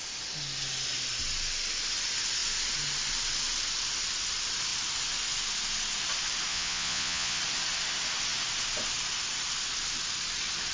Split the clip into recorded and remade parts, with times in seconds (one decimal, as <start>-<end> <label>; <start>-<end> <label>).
0.0-6.5 recorded; 6.5-7.4 remade; 7.4-10.7 recorded